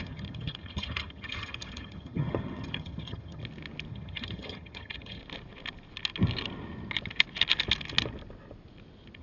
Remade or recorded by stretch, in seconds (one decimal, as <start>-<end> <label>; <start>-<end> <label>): 0.0-3.4 remade; 3.4-3.9 recorded; 3.9-5.2 remade; 5.2-9.2 recorded